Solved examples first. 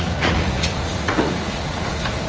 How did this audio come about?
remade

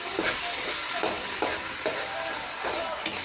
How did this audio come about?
recorded